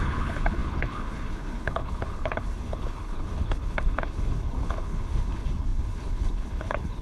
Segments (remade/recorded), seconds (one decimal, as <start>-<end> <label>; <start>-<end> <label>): 0.0-7.0 remade